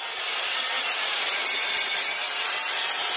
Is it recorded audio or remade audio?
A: remade